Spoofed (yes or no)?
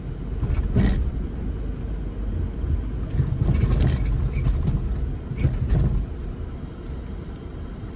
no